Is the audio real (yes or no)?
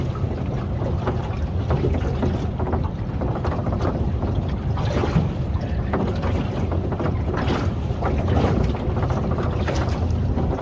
yes